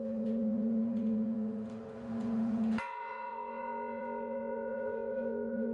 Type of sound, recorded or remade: remade